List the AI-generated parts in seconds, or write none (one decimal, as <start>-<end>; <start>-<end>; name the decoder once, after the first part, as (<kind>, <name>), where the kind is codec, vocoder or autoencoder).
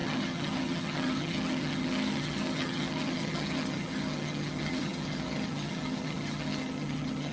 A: 0.0-7.3 (vocoder, HiFi-GAN)